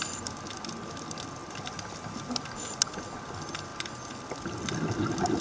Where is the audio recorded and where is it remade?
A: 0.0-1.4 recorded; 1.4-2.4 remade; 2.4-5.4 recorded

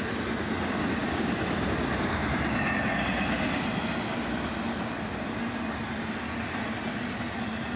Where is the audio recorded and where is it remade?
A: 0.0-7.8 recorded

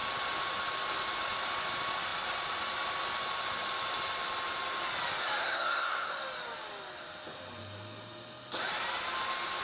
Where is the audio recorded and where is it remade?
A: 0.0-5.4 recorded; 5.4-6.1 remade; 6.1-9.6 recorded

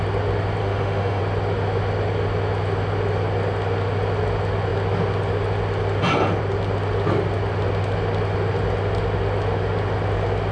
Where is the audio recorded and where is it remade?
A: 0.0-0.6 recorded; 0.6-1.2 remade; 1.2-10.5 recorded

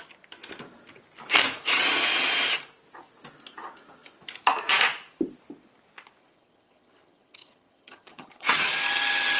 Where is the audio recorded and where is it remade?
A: 0.0-6.2 recorded; 6.2-8.7 remade; 8.7-9.4 recorded

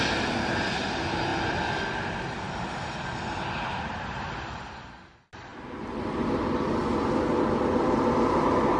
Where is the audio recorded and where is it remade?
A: 0.0-8.8 recorded